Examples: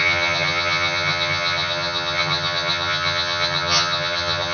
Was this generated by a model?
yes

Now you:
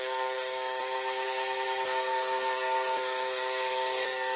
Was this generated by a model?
yes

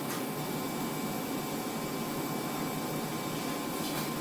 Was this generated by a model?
no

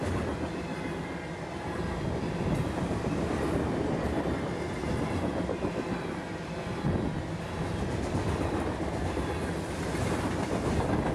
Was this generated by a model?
no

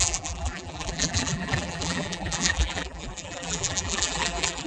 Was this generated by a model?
yes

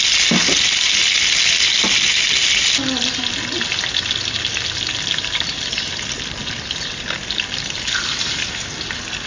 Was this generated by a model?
no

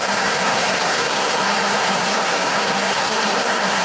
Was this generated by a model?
yes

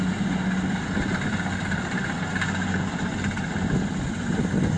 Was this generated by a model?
no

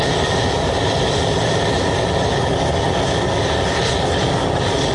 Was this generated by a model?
no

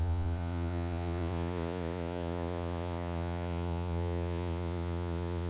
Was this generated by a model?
yes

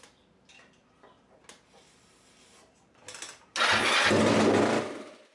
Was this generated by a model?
no